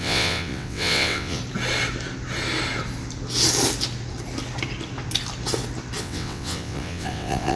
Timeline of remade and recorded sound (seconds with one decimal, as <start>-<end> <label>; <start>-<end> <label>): 0.0-1.4 remade; 1.4-6.0 recorded; 6.0-7.6 remade